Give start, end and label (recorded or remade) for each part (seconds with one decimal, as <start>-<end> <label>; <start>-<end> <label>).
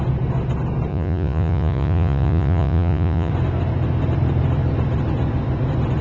0.0-0.9 recorded; 0.9-3.3 remade; 3.3-6.0 recorded